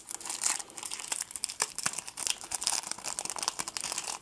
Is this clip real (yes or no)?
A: yes